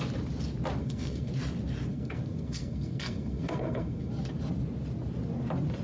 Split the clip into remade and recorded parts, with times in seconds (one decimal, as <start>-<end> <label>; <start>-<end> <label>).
0.0-0.8 recorded; 0.8-1.3 remade; 1.3-1.9 recorded; 1.9-4.1 remade; 4.1-5.8 recorded